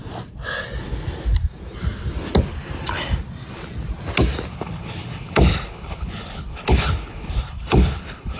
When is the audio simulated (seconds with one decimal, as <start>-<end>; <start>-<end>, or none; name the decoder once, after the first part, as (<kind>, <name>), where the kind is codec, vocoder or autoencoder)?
4.5-8.4 (codec, HILCodec)